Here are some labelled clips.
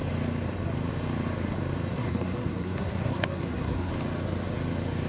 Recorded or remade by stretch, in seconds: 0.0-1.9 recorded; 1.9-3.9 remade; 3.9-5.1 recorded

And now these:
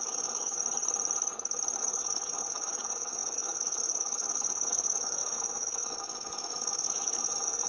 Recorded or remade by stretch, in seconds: 0.0-0.6 remade; 0.6-1.8 recorded; 1.8-7.7 remade